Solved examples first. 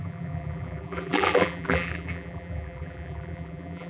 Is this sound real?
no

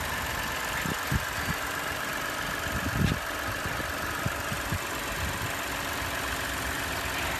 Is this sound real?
yes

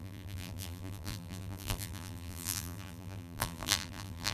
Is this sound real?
no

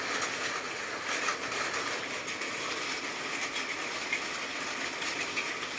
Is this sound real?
yes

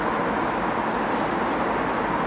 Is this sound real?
yes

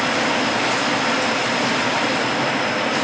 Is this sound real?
yes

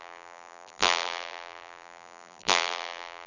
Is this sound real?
no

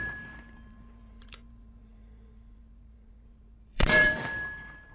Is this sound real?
no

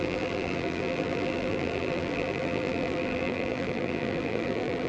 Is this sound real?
no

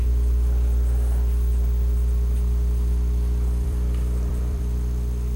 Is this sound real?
no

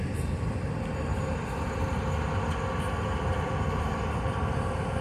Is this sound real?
yes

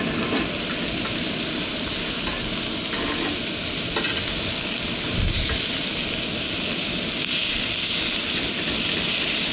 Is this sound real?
yes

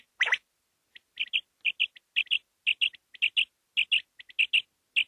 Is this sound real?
yes